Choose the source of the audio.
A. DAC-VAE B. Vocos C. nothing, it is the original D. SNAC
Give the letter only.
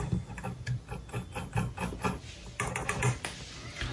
C